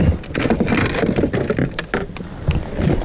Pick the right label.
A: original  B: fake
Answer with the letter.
A